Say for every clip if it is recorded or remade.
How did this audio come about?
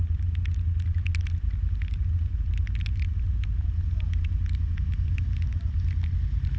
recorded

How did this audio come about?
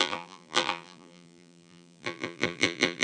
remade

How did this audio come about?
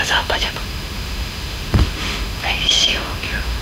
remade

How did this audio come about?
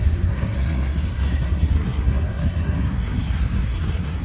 remade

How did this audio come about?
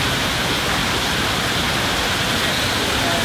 recorded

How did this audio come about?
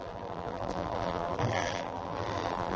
remade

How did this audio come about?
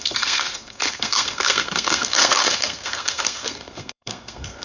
remade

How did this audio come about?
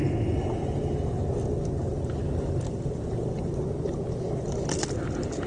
recorded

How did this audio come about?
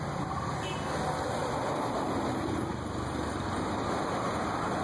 recorded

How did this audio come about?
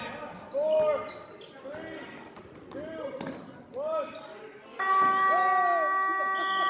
recorded